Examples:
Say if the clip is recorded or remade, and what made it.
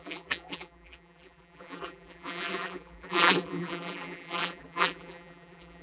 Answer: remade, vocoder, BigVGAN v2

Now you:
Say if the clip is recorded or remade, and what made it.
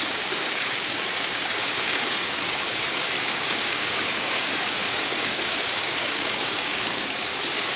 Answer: remade, codec, DAC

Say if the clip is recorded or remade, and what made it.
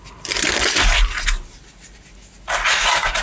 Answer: recorded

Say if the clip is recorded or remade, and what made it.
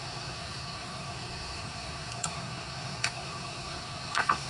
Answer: remade, codec, SNAC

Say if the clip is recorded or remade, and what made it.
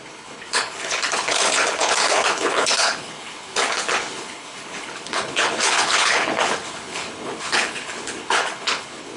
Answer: remade, codec, HILCodec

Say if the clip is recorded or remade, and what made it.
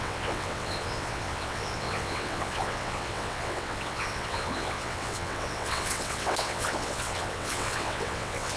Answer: remade, vocoder, WaveNeXt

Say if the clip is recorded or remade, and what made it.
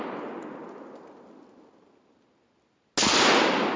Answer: recorded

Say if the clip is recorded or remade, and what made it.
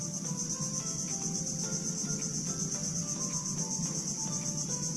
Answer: recorded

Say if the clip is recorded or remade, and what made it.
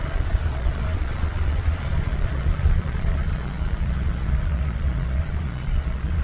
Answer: remade, vocoder, Vocos